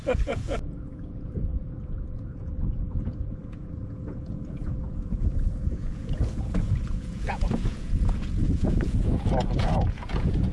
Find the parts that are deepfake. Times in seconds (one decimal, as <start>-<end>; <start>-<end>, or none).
0.0-10.5